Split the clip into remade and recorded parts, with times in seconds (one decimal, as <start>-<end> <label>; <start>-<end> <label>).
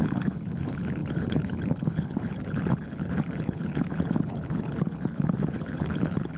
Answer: 0.0-6.4 remade